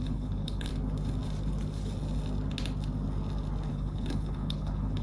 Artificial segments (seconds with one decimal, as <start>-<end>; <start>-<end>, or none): 0.0-0.7; 3.7-5.0